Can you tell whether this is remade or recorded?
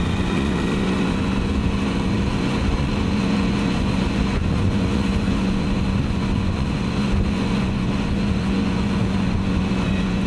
remade